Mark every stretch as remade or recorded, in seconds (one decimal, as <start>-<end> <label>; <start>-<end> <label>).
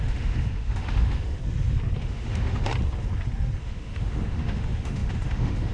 0.0-1.4 remade; 1.4-2.0 recorded; 2.0-2.7 remade; 2.7-3.6 recorded; 3.6-5.7 remade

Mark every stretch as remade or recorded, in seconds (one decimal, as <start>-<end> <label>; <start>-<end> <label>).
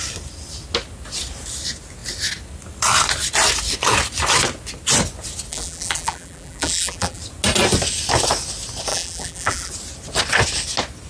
0.0-5.5 recorded; 5.5-7.2 remade; 7.2-8.9 recorded; 8.9-9.7 remade; 9.7-11.1 recorded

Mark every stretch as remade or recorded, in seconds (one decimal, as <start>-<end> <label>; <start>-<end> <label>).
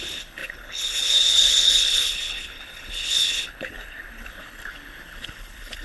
0.0-5.8 remade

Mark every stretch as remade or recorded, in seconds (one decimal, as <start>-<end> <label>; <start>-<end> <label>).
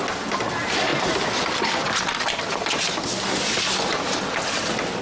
0.0-5.0 recorded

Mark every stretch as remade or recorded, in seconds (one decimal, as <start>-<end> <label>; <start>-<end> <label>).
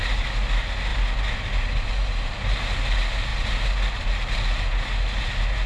0.0-5.7 recorded